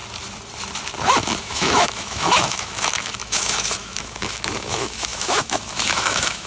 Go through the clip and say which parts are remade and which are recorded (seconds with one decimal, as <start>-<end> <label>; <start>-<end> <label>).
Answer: 0.0-1.4 recorded; 1.4-6.5 remade